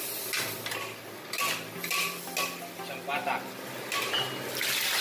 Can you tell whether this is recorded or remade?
recorded